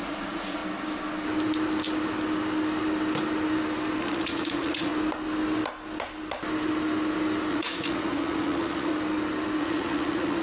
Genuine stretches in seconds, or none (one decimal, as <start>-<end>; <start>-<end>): 0.6-4.0; 4.9-7.5; 8.9-9.6